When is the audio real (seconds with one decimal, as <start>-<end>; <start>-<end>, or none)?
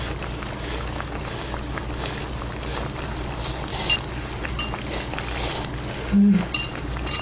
0.0-7.2